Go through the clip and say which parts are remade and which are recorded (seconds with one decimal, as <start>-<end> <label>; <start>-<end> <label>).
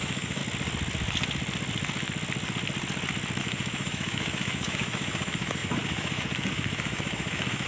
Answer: 0.0-0.4 remade; 0.4-3.4 recorded; 3.4-7.7 remade